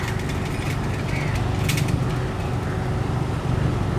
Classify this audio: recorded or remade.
recorded